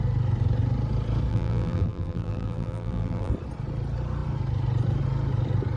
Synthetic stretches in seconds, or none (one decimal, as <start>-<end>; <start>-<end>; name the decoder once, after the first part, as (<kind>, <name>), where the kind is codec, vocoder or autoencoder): 1.3-3.3 (vocoder, BigVGAN v2)